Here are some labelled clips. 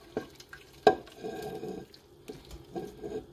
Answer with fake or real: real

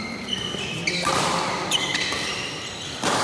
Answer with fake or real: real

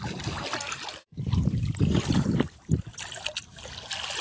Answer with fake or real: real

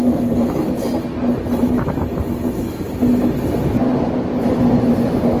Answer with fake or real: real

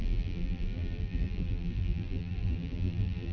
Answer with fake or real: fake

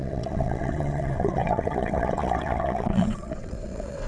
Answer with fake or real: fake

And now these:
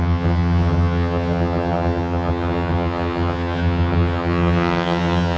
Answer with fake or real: fake